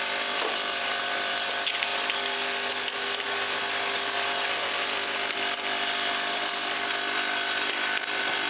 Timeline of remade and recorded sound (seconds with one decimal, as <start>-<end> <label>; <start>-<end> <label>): 0.0-1.9 remade; 1.9-5.4 recorded; 5.4-8.5 remade